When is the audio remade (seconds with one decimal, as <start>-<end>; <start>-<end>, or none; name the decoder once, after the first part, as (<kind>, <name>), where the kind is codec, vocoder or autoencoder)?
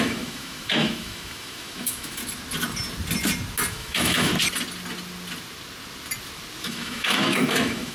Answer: 0.0-2.2 (autoencoder, DAC-VAE); 3.7-4.3; 6.6-7.9